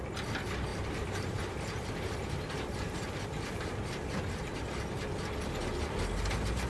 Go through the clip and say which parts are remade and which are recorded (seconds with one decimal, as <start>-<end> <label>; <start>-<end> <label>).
0.0-0.7 recorded; 0.7-4.7 remade; 4.7-6.7 recorded